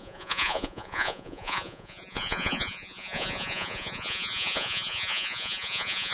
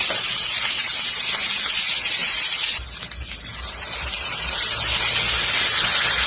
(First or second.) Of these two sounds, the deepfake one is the first